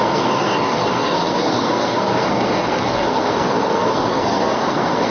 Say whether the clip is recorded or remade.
remade